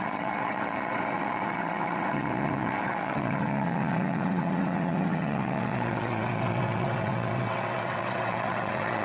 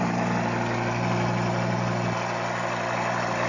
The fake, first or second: first